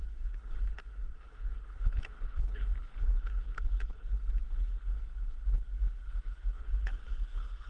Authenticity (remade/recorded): remade